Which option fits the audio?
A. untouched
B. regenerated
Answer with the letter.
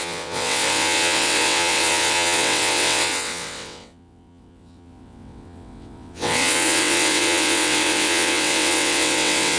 B